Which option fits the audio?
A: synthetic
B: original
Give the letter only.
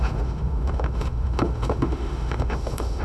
A